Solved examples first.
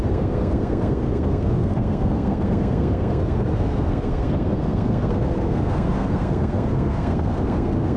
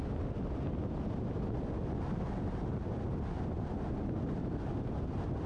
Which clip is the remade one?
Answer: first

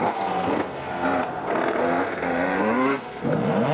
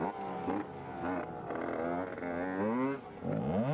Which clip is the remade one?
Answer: first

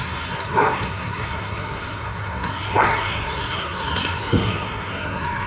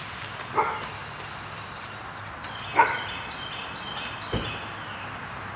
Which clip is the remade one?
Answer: first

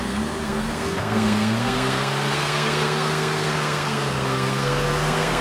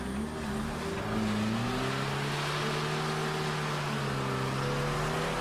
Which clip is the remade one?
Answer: first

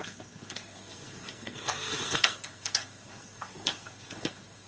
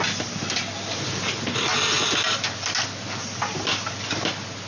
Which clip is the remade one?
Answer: first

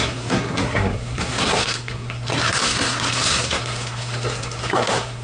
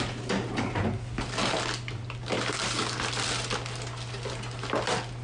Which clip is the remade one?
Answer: first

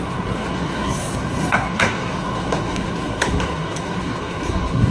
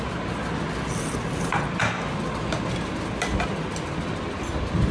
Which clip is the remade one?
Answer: first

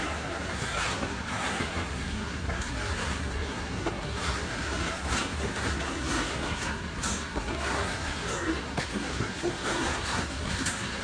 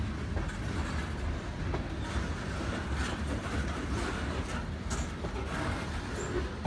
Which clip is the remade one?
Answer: first